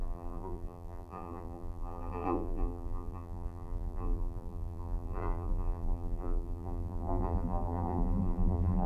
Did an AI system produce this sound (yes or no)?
yes